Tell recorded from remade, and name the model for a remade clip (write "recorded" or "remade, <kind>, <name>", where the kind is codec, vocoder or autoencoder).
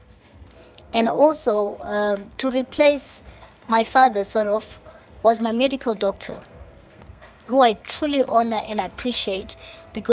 remade, codec, SNAC